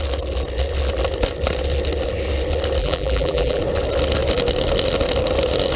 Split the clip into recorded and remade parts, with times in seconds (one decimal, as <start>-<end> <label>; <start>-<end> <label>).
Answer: 0.0-2.8 recorded; 2.8-3.6 remade; 3.6-5.8 recorded